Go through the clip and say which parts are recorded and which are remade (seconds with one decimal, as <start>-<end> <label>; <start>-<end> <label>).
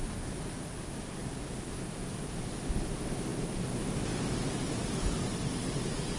0.0-1.1 recorded; 1.1-1.7 remade; 1.7-6.2 recorded